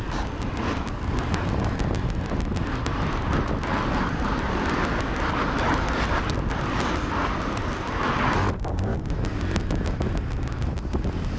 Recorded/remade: recorded